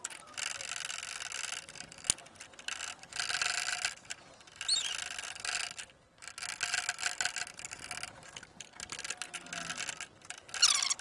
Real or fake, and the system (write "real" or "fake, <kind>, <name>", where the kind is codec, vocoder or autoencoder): real